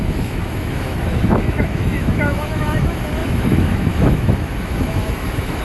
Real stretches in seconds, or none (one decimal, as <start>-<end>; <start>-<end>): none